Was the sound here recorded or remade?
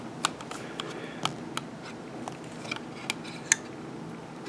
recorded